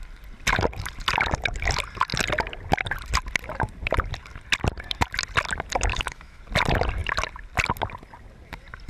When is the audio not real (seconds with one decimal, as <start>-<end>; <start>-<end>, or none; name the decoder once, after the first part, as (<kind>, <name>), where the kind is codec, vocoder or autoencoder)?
5.9-6.4 (autoencoder, DAC-VAE)